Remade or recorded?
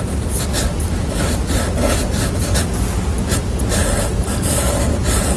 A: recorded